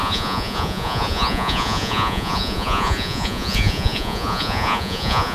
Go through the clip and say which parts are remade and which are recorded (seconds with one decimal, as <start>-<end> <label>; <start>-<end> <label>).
0.0-5.3 remade